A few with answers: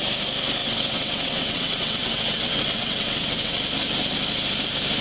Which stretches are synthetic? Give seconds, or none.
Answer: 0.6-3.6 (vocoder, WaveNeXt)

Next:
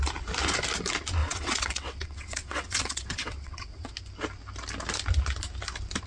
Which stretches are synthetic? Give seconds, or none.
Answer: 1.2-3.9 (vocoder, WaveNeXt)

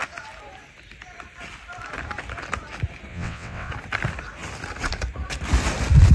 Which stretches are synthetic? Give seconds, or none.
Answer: 3.1-3.7 (vocoder, WaveNeXt)

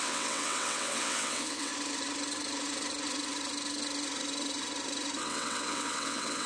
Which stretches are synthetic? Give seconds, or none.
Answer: 0.0-1.7 (vocoder, WaveNeXt); 5.2-6.5

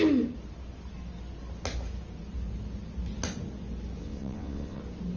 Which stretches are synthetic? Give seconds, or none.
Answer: 4.0-4.8 (vocoder, WaveNeXt)